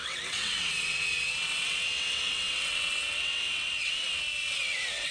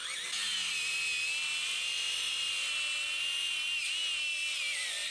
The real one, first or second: second